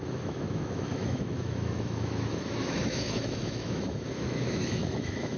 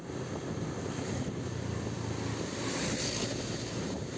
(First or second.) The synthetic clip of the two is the first